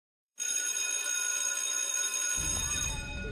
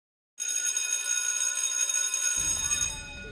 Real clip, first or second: second